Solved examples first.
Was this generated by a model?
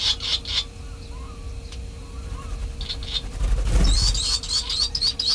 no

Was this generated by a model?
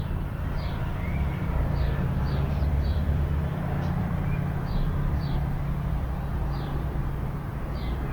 yes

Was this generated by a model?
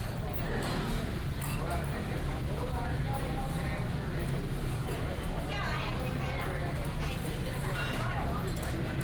no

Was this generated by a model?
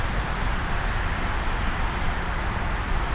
no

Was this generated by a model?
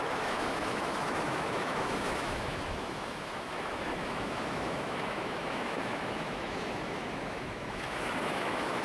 yes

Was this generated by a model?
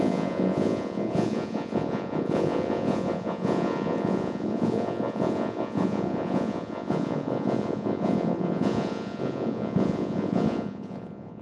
yes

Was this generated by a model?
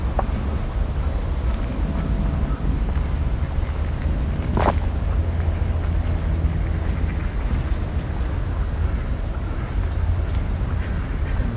no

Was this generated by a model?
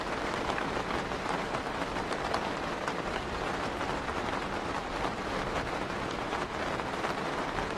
yes